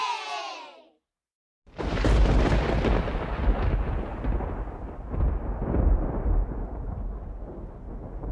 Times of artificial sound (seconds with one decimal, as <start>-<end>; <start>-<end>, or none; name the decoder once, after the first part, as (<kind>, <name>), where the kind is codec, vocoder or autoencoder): 0.0-0.5 (vocoder, Vocos)